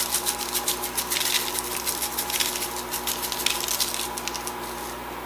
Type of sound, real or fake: real